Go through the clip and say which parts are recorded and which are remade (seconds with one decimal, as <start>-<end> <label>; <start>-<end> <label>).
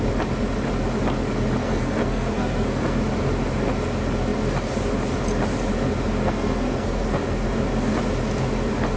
0.0-1.6 recorded; 1.6-3.0 remade; 3.0-6.2 recorded; 6.2-7.6 remade; 7.6-9.0 recorded